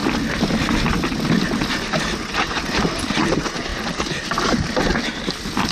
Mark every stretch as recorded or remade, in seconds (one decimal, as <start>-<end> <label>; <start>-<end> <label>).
0.0-5.7 recorded